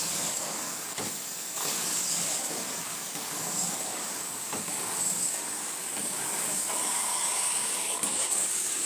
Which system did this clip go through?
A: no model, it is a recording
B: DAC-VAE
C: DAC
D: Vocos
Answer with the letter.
C